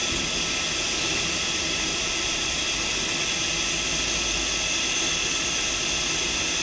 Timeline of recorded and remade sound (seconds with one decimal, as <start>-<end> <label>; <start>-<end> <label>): 0.0-6.6 recorded